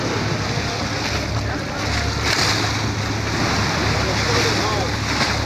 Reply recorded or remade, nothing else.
recorded